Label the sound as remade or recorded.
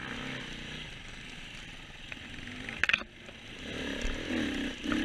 recorded